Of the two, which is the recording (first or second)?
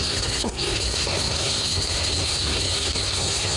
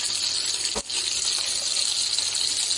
second